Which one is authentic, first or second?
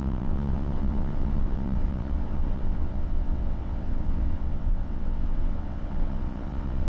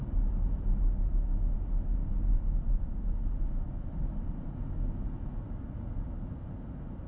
second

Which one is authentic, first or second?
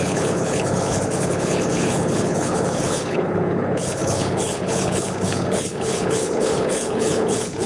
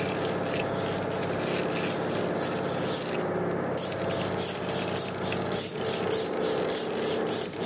second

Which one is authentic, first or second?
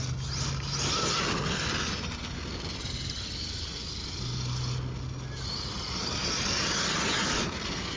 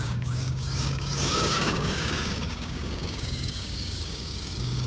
first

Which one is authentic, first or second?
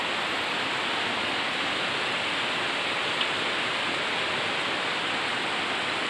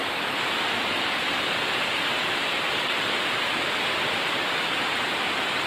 first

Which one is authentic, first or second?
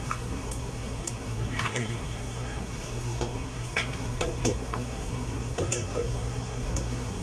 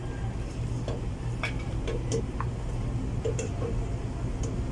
second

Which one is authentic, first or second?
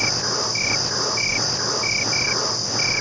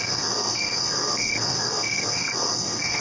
first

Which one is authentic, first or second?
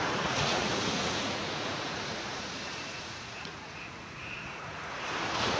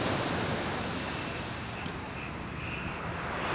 second